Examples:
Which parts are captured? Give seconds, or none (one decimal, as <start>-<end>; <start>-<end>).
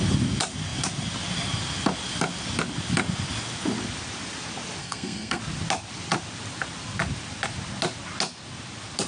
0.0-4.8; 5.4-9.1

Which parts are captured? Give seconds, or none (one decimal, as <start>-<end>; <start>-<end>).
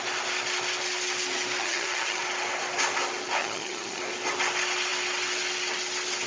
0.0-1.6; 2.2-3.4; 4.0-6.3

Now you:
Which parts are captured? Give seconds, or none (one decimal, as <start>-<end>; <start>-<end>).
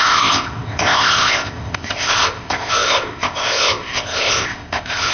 none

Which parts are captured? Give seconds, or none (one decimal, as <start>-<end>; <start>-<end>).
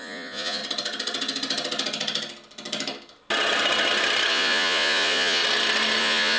0.6-4.3; 5.4-6.0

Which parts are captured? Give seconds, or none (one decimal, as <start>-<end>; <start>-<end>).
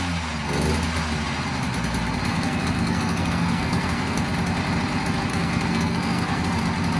0.0-2.3; 4.2-5.3; 6.6-7.0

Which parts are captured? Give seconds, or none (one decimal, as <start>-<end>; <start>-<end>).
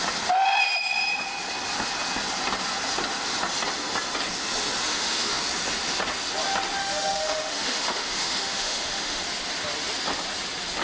0.0-4.9; 5.4-6.8; 9.2-10.8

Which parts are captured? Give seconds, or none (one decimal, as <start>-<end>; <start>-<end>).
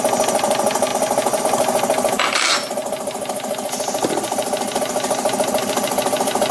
0.0-6.5